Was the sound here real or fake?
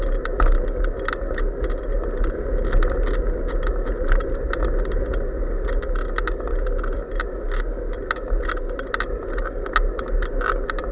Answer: real